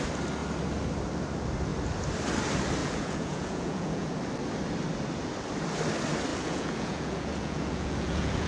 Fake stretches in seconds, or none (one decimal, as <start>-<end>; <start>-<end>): 2.8-4.2; 6.3-8.5